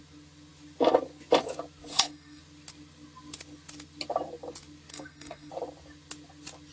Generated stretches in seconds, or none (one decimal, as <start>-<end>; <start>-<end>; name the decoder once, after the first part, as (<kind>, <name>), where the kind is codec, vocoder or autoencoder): 1.9-2.4 (codec, SNAC); 4.9-5.5